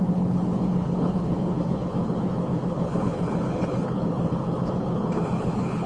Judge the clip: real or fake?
fake